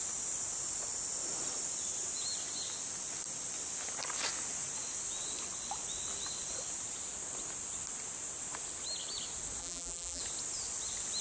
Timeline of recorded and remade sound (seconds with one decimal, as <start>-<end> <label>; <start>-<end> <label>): 0.0-9.6 recorded; 9.6-10.2 remade; 10.2-11.2 recorded